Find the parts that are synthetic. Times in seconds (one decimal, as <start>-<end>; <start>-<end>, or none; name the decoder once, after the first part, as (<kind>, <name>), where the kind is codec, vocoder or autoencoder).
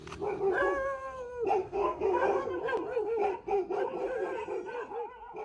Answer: 1.6-2.5 (codec, SNAC)